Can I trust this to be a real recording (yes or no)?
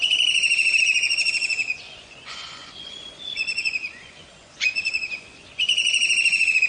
no